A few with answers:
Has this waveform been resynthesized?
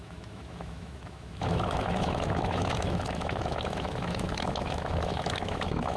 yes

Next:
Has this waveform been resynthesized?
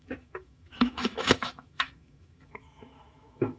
yes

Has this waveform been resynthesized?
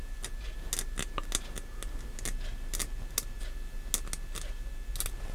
no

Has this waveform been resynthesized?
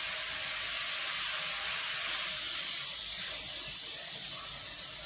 no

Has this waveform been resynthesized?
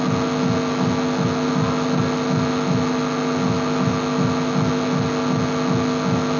no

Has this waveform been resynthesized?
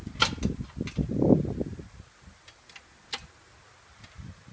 no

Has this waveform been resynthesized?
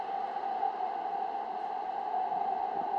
no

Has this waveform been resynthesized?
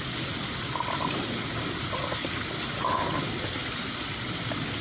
no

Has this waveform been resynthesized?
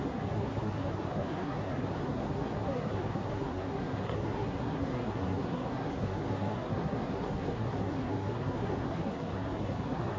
yes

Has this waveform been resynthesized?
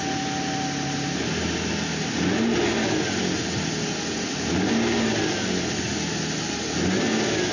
no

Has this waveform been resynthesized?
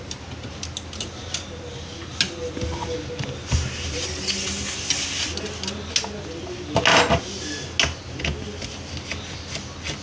no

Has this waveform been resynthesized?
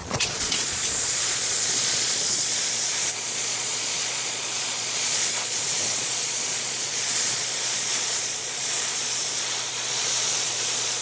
yes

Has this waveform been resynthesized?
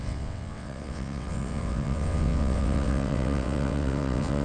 yes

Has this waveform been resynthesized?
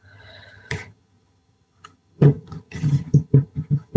yes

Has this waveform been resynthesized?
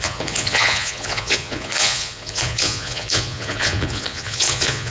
yes